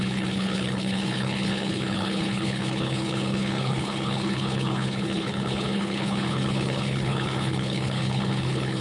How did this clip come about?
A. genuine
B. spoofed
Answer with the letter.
B